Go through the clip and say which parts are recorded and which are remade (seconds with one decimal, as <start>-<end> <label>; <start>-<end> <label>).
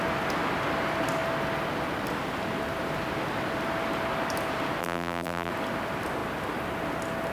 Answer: 0.0-4.8 recorded; 4.8-5.5 remade; 5.5-7.3 recorded